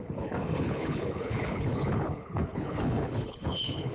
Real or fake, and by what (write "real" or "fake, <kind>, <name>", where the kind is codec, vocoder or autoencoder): fake, codec, HILCodec